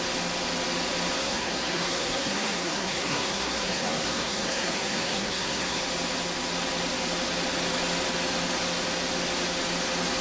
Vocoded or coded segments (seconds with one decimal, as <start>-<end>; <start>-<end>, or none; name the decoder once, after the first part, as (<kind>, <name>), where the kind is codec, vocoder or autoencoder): 1.2-5.8 (codec, SNAC)